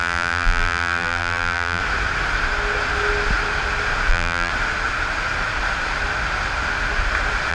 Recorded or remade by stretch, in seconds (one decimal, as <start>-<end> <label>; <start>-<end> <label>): 0.0-1.8 remade; 1.8-4.1 recorded; 4.1-4.5 remade; 4.5-7.5 recorded